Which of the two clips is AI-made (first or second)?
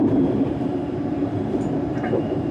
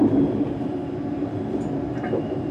first